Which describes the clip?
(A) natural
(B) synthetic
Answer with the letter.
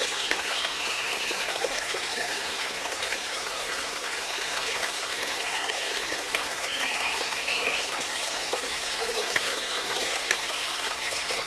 B